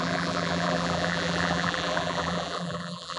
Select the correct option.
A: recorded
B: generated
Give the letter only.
B